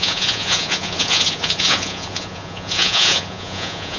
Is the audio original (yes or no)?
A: no